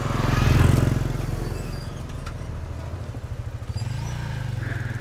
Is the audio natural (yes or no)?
yes